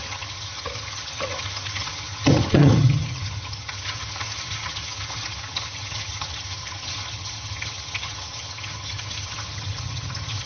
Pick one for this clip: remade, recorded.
remade